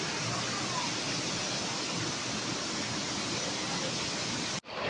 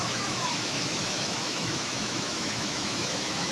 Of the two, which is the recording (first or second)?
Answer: first